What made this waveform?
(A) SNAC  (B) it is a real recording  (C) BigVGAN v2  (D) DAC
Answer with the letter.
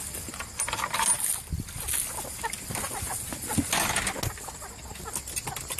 B